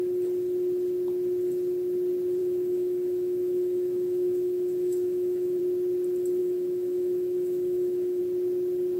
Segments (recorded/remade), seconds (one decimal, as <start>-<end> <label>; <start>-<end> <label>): 0.0-2.4 recorded; 2.4-5.6 remade; 5.6-6.4 recorded; 6.4-8.2 remade; 8.2-9.0 recorded